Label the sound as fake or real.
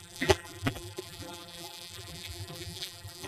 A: fake